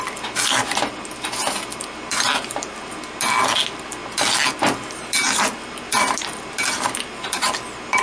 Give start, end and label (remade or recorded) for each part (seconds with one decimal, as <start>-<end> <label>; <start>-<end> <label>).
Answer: 0.0-8.0 recorded